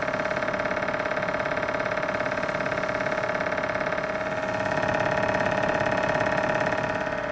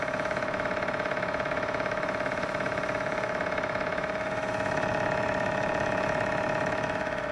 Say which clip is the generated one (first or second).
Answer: second